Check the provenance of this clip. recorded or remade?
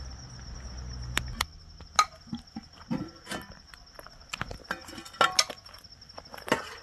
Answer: recorded